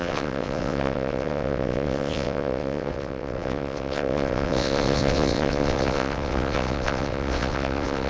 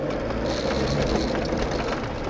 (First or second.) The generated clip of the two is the first